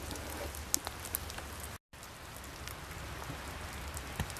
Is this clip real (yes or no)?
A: yes